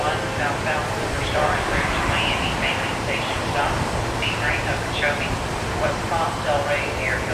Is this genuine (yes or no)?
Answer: no